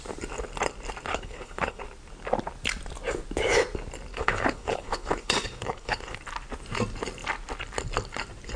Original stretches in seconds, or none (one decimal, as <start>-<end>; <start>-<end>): 0.0-1.1; 1.8-4.1; 6.2-8.6